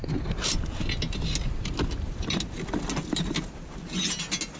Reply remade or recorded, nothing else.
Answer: recorded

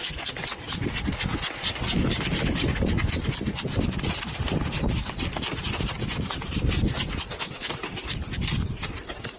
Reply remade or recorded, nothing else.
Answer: recorded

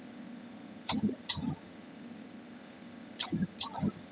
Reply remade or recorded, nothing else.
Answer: remade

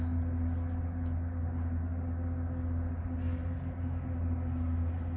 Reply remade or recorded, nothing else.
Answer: recorded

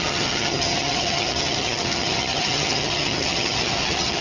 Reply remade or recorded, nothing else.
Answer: remade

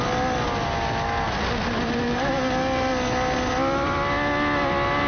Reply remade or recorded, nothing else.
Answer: recorded